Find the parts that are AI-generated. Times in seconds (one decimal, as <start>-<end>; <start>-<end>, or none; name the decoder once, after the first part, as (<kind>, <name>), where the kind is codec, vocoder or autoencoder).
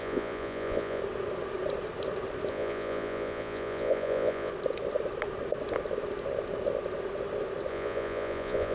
0.0-1.0 (vocoder, Vocos); 2.5-4.5; 7.7-8.7